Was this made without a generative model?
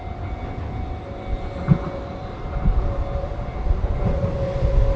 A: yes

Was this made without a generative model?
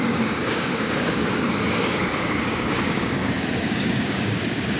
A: no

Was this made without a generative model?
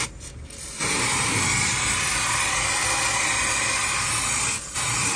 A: yes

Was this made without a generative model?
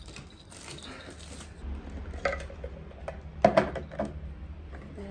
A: yes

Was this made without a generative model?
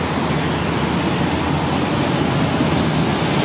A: yes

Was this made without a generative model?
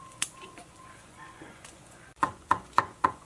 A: no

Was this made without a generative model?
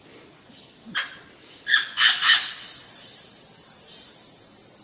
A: no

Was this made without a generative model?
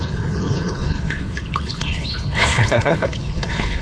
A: no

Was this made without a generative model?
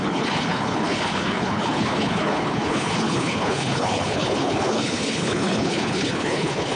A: no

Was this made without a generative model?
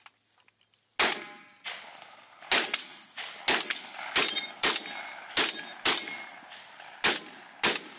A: yes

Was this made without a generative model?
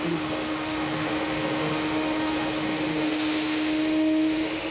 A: no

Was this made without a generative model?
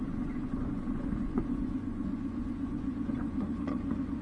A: no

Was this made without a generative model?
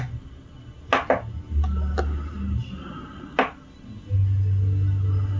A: yes